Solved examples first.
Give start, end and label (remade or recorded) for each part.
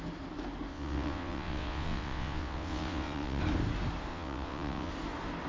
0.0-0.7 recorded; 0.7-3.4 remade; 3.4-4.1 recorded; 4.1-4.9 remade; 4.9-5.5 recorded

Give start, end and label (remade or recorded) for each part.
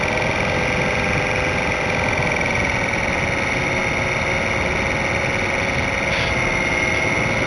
0.0-7.5 recorded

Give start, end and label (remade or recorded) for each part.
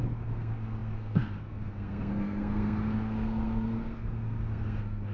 0.0-5.1 remade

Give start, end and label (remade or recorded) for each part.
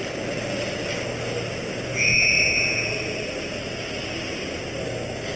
0.0-1.9 recorded; 1.9-2.9 remade; 2.9-5.4 recorded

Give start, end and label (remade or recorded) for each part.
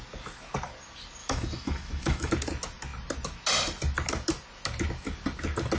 0.0-1.2 recorded; 1.2-2.3 remade; 2.3-5.8 recorded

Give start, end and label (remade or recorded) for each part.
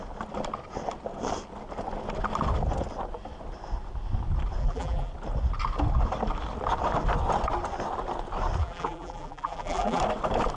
0.0-4.6 recorded; 4.6-5.1 remade; 5.1-8.6 recorded; 8.6-10.0 remade; 10.0-10.6 recorded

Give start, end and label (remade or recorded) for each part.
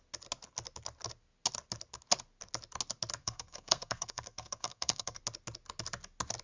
0.0-3.2 recorded; 3.2-5.2 remade; 5.2-6.4 recorded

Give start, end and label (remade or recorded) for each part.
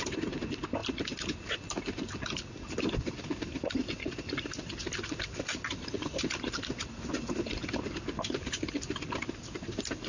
0.0-10.1 recorded